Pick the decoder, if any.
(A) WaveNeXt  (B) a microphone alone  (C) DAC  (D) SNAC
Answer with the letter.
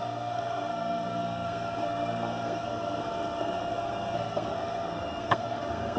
D